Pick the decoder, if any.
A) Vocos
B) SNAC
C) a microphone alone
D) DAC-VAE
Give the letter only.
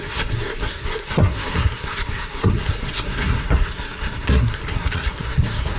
B